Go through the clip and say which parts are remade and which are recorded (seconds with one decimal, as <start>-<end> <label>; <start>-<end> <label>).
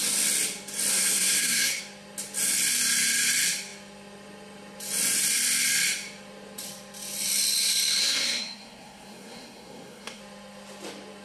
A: 0.0-0.9 recorded; 0.9-1.8 remade; 1.8-8.0 recorded; 8.0-10.2 remade; 10.2-11.2 recorded